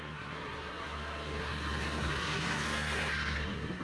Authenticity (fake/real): fake